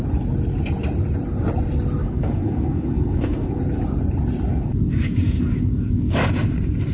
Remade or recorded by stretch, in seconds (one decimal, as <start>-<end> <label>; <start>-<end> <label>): 0.0-2.0 recorded; 2.0-3.6 remade; 3.6-4.5 recorded; 4.5-6.3 remade; 6.3-6.9 recorded